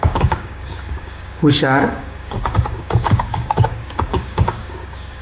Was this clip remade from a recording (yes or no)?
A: yes